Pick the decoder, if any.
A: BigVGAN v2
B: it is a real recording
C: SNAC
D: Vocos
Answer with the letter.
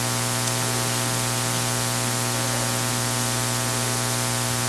B